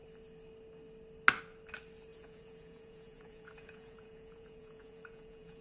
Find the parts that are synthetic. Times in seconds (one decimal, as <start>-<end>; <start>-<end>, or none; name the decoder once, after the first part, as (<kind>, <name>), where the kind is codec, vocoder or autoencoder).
2.1-5.6 (vocoder, Vocos)